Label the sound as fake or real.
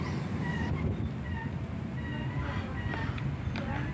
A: real